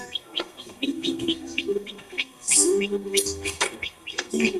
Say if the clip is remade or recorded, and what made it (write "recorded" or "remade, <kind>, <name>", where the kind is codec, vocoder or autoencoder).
remade, codec, SNAC